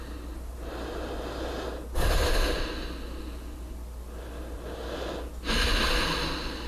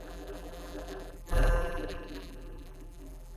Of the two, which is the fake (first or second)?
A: second